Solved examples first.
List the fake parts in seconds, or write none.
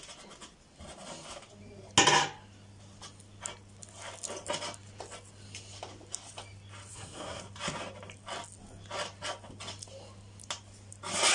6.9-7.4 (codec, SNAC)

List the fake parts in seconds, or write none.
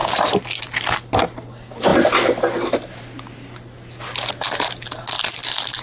none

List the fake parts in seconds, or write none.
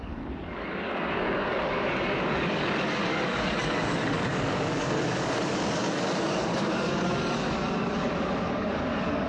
0.0-9.3 (codec, DAC)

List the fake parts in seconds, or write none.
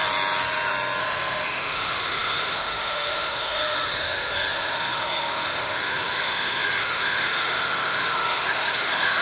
1.0-9.2 (autoencoder, DAC-VAE)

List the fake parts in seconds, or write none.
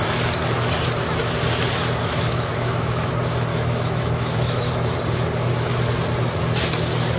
2.0-3.1 (autoencoder, DAC-VAE); 3.5-4.7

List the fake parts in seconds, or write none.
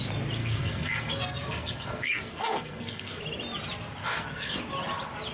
0.4-3.2 (codec, SNAC); 4.0-4.6